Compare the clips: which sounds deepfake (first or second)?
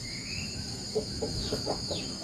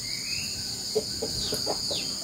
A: first